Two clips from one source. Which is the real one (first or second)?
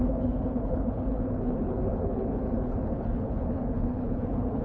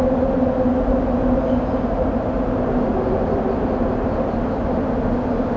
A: second